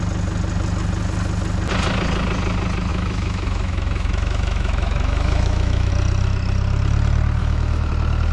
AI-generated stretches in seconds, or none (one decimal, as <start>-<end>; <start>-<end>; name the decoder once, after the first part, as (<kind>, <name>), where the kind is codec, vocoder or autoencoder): 2.9-5.9 (autoencoder, DAC-VAE); 7.4-7.9